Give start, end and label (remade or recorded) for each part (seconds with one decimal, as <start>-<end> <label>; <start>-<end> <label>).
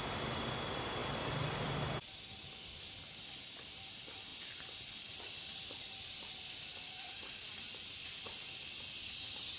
0.0-1.0 recorded; 1.0-1.7 remade; 1.7-4.3 recorded; 4.3-6.9 remade; 6.9-9.6 recorded